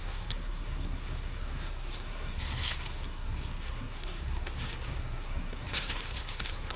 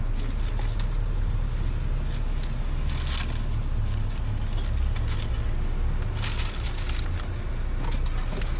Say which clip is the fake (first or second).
first